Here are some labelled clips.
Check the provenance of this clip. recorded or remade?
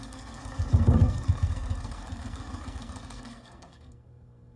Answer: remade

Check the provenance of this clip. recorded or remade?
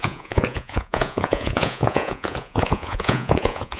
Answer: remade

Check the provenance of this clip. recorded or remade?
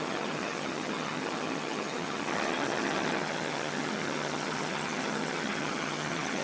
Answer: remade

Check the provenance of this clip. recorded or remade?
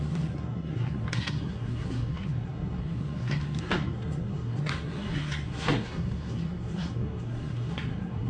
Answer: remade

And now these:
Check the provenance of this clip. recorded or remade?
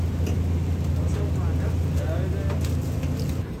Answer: recorded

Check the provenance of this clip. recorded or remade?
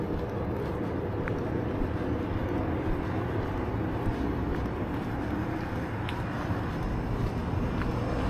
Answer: recorded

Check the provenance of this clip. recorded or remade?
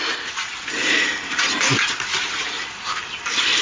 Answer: recorded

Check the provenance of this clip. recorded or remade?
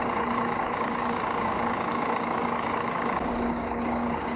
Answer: remade